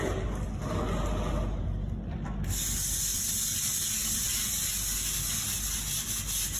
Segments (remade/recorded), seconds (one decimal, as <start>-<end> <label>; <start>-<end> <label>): 0.0-3.1 recorded; 3.1-4.7 remade; 4.7-6.6 recorded

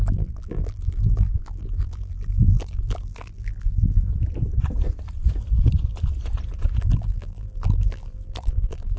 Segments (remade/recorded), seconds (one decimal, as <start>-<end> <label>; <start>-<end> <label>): 0.0-4.1 remade; 4.1-6.8 recorded; 6.8-9.0 remade

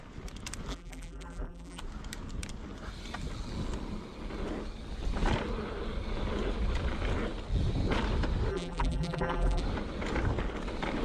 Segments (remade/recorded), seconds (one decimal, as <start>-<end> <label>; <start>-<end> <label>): 0.0-0.7 recorded; 0.7-1.8 remade; 1.8-8.5 recorded; 8.5-9.6 remade; 9.6-11.0 recorded